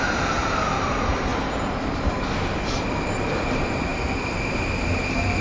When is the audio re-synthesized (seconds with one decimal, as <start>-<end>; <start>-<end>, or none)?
0.0-1.3; 2.6-3.9; 4.5-5.4